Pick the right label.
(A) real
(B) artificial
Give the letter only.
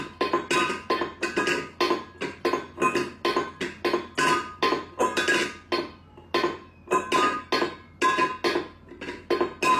A